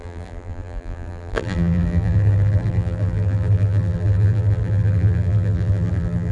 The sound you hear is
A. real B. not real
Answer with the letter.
B